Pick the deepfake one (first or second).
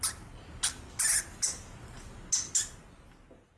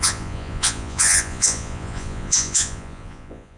second